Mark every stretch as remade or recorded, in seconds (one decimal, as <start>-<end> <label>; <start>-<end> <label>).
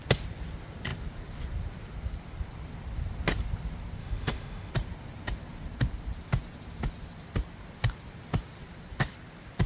0.0-4.0 recorded; 4.0-4.7 remade; 4.7-9.7 recorded